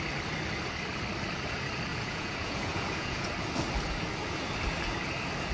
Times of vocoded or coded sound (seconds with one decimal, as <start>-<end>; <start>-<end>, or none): 1.9-3.3